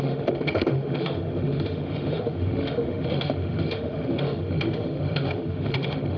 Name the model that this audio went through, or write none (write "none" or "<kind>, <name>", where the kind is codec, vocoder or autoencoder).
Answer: autoencoder, DAC-VAE